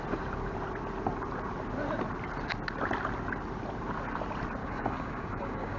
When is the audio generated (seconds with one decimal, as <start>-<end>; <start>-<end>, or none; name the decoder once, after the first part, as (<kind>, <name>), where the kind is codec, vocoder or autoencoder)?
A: 4.6-5.8 (codec, DAC)